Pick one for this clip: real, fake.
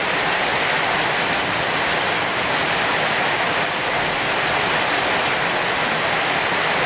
real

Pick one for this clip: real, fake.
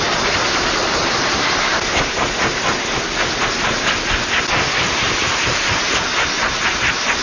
real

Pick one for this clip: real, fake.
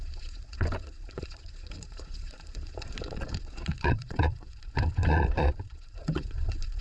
fake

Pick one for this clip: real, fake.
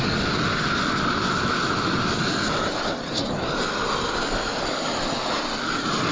real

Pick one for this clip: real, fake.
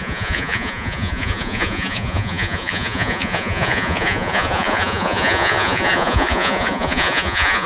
fake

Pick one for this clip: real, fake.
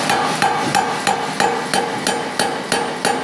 real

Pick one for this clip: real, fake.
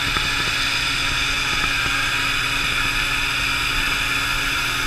real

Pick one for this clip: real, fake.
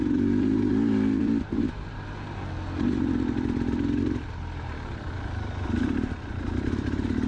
real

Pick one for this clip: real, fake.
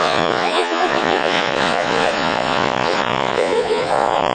fake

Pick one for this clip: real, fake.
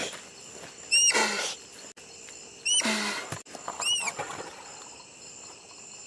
real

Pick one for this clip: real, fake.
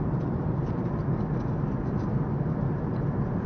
real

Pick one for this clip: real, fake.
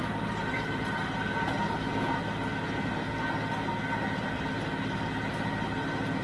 real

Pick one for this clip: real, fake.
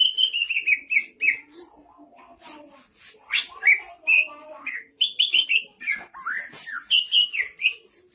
real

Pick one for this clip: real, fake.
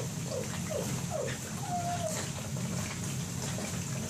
real